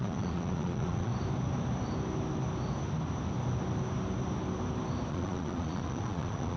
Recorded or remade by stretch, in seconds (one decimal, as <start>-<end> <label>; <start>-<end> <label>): 0.0-1.1 remade; 1.1-5.1 recorded; 5.1-6.6 remade